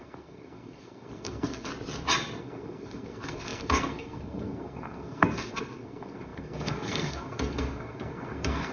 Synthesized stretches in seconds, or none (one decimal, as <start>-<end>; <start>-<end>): 0.0-1.7; 2.4-8.7